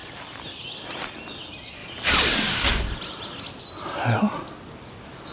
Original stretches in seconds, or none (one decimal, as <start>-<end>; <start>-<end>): 0.0-1.8; 2.7-5.3